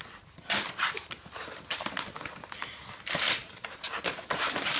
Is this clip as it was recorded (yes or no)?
yes